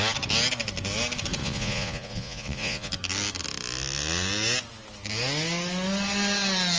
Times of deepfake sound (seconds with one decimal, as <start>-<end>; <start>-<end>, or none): 1.4-2.9